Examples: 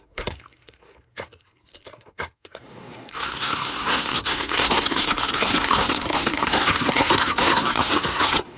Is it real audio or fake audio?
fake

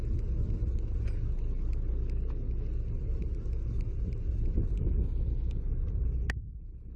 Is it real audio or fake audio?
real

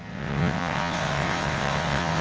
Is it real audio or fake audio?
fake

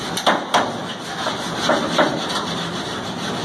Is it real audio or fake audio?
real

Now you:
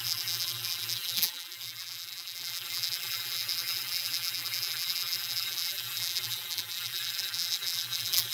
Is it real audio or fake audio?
fake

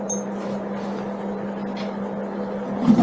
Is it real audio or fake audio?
real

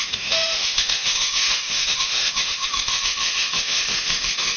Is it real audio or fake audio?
fake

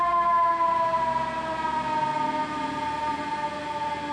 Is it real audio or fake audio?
real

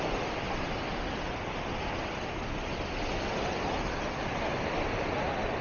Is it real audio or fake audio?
real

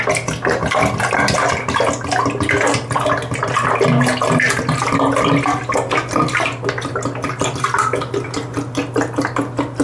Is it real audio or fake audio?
real